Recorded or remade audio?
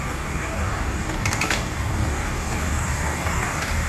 remade